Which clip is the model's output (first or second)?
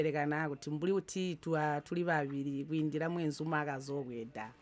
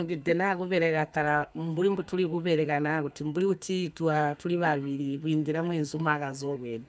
second